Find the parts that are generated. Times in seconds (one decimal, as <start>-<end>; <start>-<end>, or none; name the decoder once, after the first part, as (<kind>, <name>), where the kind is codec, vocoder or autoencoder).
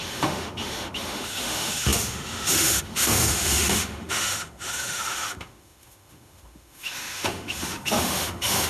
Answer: 0.0-8.7 (autoencoder, DAC-VAE)